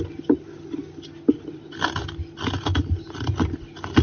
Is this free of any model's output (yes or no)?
yes